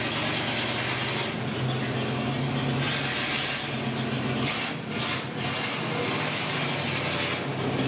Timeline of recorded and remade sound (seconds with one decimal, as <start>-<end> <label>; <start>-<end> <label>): 0.0-7.9 recorded